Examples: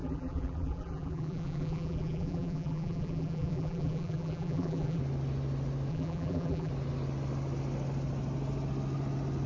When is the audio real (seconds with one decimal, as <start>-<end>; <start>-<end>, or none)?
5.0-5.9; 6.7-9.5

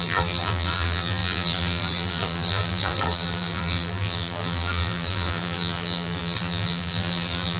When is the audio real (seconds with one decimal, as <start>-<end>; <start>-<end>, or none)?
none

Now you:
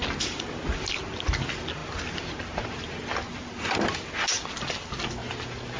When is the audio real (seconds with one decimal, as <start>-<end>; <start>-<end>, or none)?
0.0-5.8

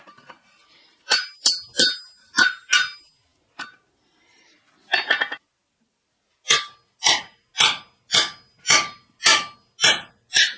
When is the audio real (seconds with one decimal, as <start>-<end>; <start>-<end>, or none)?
0.0-10.6

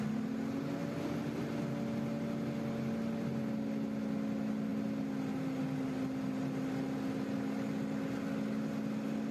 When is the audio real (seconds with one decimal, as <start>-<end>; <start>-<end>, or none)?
0.0-9.3

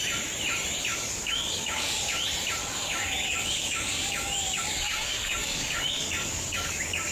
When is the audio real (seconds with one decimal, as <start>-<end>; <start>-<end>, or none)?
0.0-0.9; 2.2-2.6